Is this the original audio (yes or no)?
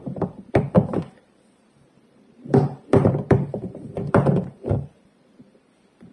no